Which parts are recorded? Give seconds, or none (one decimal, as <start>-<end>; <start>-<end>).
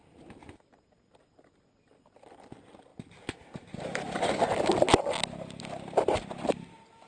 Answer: 0.0-7.1